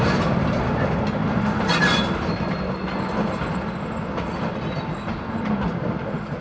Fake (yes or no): no